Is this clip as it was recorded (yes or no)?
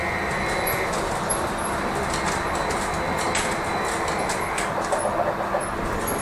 yes